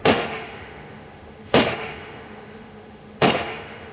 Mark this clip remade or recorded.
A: remade